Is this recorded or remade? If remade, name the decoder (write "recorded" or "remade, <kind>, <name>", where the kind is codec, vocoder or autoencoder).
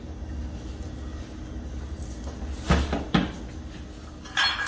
recorded